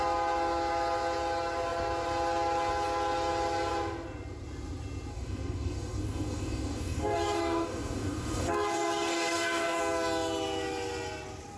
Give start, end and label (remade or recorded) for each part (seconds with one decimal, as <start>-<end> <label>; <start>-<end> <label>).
0.0-5.1 recorded; 5.1-9.8 remade; 9.8-11.6 recorded